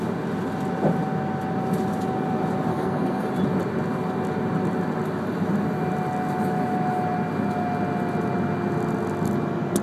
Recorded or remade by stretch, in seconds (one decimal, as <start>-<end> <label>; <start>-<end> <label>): 0.0-2.7 recorded; 2.7-3.3 remade; 3.3-9.8 recorded